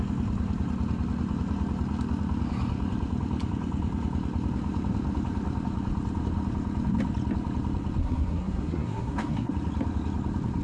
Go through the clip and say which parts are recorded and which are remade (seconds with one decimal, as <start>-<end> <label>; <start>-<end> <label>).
0.0-8.0 recorded; 8.0-9.5 remade; 9.5-10.6 recorded